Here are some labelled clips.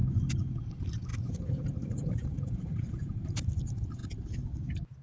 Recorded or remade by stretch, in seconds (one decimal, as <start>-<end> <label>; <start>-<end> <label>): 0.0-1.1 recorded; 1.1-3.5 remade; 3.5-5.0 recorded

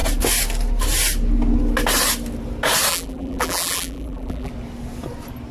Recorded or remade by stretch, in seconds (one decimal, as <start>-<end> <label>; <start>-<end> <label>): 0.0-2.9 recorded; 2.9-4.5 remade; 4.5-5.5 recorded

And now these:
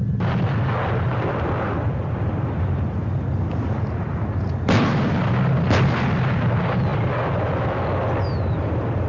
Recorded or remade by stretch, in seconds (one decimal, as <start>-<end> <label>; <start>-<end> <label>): 0.0-1.1 recorded; 1.1-4.2 remade; 4.2-9.1 recorded

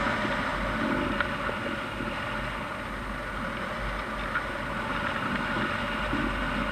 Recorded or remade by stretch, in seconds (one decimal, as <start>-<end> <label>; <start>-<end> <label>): 0.0-6.7 recorded

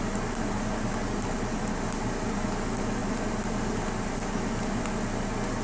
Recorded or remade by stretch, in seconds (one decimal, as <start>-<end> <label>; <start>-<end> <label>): 0.0-5.6 recorded